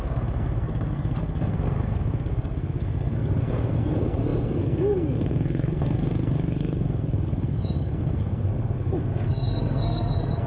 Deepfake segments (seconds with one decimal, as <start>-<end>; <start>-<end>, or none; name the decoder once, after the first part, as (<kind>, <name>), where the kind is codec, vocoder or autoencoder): 0.0-10.5 (codec, SNAC)